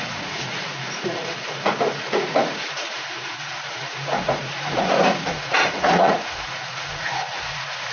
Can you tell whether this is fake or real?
fake